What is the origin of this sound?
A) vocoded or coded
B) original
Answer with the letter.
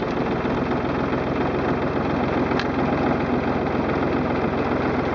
B